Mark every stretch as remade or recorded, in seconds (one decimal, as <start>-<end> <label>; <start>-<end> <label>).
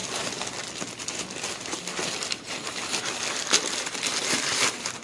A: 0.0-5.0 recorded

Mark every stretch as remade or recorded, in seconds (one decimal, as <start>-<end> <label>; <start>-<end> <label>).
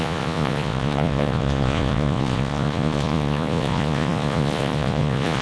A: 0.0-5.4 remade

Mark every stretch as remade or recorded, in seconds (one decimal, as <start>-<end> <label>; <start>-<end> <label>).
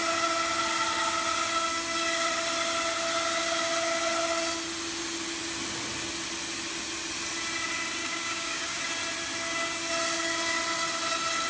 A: 0.0-8.0 recorded; 8.0-8.8 remade; 8.8-11.5 recorded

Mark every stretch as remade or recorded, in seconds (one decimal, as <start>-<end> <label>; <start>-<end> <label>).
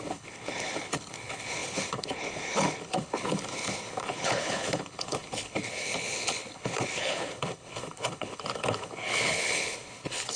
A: 0.0-10.4 remade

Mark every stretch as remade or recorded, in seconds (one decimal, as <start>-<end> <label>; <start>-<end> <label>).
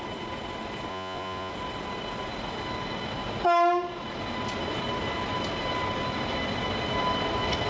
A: 0.0-0.9 recorded; 0.9-1.5 remade; 1.5-7.7 recorded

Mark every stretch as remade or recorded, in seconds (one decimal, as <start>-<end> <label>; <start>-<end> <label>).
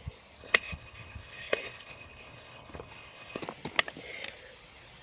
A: 0.0-0.4 recorded; 0.4-3.4 remade; 3.4-5.0 recorded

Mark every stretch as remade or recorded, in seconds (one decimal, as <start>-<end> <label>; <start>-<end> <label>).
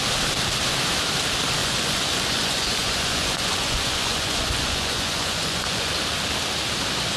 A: 0.0-1.6 recorded; 1.6-5.9 remade; 5.9-7.2 recorded